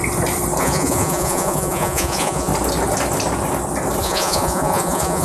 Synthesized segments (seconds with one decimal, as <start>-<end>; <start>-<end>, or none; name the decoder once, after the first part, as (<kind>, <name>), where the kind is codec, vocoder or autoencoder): 0.6-2.5 (vocoder, Vocos); 4.0-5.2